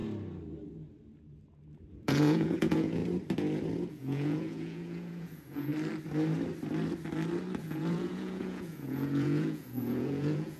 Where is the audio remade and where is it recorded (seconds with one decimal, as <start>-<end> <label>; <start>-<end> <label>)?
0.0-1.9 recorded; 1.9-3.0 remade; 3.0-3.9 recorded; 3.9-5.7 remade; 5.7-7.6 recorded; 7.6-10.6 remade